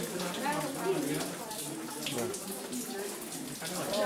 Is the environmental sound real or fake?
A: real